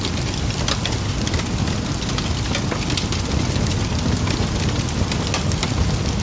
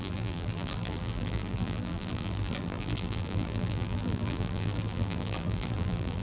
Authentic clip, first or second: first